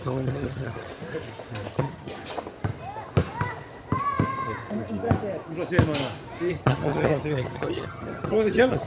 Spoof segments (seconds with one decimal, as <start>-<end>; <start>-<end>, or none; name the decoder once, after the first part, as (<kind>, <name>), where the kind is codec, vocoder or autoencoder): 0.0-0.9 (vocoder, HiFi-GAN); 1.7-2.2; 6.5-8.9

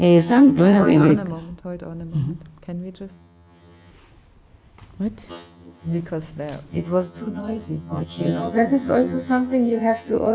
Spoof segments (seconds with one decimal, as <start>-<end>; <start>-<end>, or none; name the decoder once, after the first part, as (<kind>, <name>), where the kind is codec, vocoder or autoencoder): 0.0-1.1 (vocoder, HiFi-GAN); 3.1-3.9; 5.3-6.0; 6.7-10.3

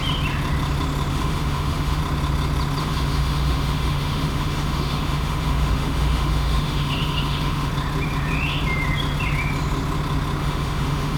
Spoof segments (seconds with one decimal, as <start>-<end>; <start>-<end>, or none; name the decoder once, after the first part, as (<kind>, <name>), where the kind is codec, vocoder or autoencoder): 1.1-2.0 (autoencoder, DAC-VAE); 2.8-7.7; 10.4-11.2

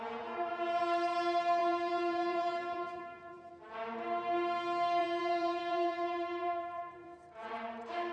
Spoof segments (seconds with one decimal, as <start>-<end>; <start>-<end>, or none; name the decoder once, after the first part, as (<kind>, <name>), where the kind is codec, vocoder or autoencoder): 1.6-3.5 (vocoder, Vocos); 5.0-7.5

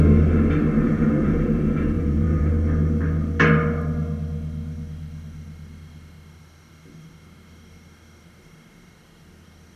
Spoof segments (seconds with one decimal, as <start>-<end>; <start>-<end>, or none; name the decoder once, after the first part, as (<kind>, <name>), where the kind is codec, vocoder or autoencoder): 0.8-2.5 (vocoder, Vocos)

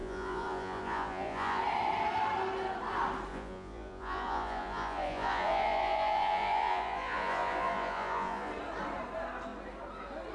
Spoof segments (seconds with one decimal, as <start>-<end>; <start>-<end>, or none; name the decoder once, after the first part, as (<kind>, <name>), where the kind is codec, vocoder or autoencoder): 0.0-1.6 (vocoder, Vocos); 3.3-8.5